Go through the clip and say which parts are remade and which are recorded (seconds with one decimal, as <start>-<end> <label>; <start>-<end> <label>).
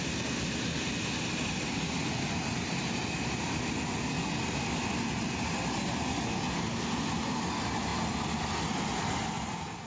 0.0-9.9 recorded